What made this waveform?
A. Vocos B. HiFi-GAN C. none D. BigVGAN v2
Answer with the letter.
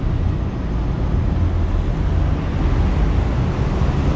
C